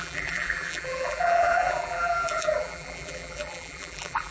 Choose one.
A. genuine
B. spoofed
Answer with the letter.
B